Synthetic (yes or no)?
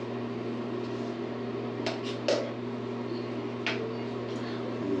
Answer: no